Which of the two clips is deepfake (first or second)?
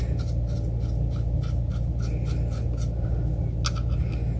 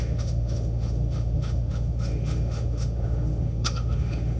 second